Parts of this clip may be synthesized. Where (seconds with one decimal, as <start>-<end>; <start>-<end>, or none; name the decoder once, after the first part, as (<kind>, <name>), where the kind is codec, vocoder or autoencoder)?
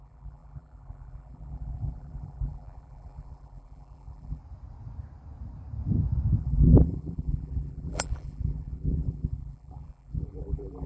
0.0-4.4 (vocoder, BigVGAN v2); 6.4-10.9